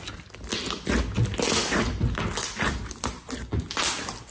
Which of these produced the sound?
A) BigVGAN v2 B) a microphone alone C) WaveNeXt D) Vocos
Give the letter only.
B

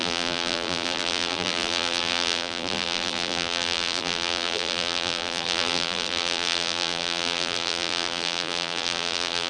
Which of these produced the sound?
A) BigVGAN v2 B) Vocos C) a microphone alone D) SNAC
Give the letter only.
A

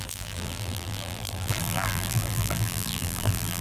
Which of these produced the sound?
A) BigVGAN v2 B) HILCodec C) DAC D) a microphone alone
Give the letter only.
A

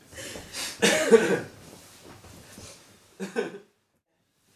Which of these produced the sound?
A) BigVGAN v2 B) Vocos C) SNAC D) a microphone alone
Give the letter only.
A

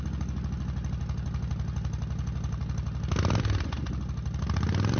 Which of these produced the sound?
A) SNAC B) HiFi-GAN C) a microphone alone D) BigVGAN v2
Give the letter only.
C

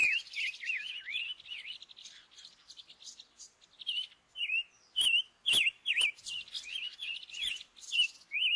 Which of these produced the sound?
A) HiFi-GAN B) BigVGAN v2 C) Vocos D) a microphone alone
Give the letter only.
B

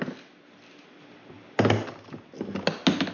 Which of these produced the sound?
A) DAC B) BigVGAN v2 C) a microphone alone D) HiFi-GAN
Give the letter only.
C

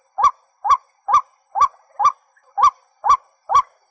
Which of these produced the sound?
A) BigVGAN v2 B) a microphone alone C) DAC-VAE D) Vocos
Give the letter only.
B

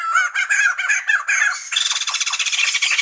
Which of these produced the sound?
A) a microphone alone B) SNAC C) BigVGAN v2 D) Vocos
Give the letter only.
A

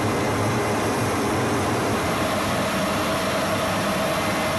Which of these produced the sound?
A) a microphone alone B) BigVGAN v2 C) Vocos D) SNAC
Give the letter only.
A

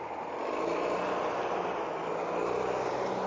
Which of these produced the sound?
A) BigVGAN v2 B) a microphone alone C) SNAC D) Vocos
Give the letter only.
B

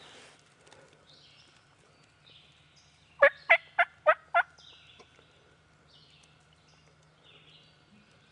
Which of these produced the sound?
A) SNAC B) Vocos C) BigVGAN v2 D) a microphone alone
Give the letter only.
D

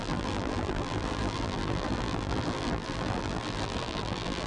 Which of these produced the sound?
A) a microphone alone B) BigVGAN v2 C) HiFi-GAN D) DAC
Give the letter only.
B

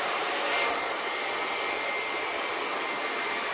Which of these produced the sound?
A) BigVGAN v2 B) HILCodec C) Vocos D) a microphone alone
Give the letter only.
D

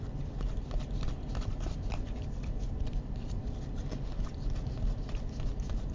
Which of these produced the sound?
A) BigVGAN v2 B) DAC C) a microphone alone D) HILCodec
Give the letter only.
C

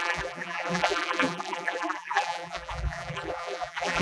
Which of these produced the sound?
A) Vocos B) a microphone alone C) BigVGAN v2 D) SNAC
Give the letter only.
C